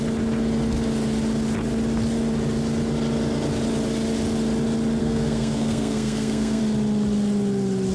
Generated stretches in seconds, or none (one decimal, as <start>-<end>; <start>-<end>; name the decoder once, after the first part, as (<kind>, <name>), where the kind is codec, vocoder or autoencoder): 5.0-6.6 (codec, SNAC)